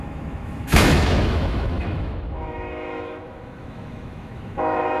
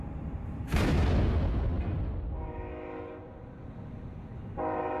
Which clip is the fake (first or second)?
first